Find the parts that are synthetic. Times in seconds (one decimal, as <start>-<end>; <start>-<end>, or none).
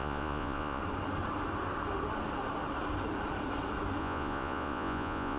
0.0-0.8; 4.0-5.4